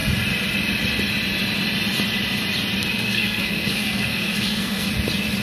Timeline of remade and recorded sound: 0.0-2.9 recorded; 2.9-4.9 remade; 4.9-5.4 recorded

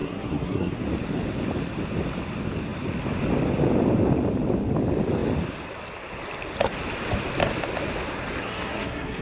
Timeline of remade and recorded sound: 0.0-0.8 remade; 0.8-8.4 recorded; 8.4-9.2 remade

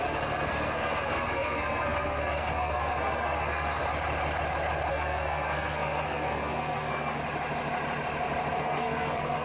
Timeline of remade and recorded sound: 0.0-3.8 remade; 3.8-4.9 recorded; 4.9-7.2 remade; 7.2-8.6 recorded; 8.6-9.4 remade

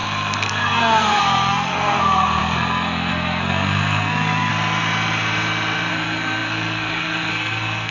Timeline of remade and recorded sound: 0.0-4.5 remade; 4.5-5.9 recorded; 5.9-7.9 remade